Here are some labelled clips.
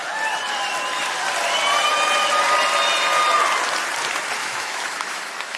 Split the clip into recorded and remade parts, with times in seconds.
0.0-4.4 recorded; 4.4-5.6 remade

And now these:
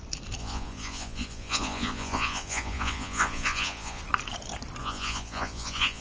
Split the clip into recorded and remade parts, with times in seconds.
0.0-0.4 recorded; 0.4-4.0 remade; 4.0-4.8 recorded; 4.8-6.0 remade

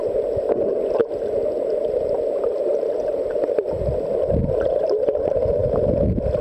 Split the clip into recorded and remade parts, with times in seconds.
0.0-2.7 recorded; 2.7-3.3 remade; 3.3-6.4 recorded

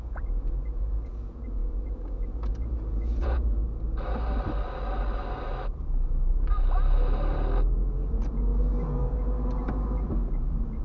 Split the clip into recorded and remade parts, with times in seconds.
0.0-3.6 remade; 3.6-8.1 recorded; 8.1-8.5 remade; 8.5-10.3 recorded; 10.3-10.8 remade

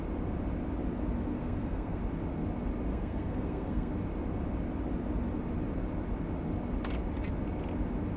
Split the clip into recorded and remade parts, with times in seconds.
0.0-1.3 recorded; 1.3-2.0 remade; 2.0-2.9 recorded; 2.9-3.9 remade; 3.9-8.2 recorded

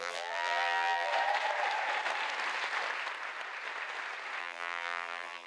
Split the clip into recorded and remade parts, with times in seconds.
0.0-1.1 remade; 1.1-4.4 recorded; 4.4-5.5 remade

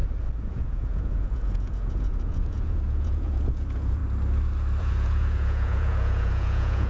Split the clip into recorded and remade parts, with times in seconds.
0.0-0.5 recorded; 0.5-4.0 remade; 4.0-4.8 recorded; 4.8-6.9 remade

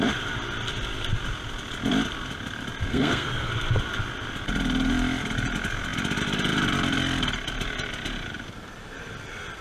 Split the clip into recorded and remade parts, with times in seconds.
0.0-2.9 recorded; 2.9-3.5 remade; 3.5-9.6 recorded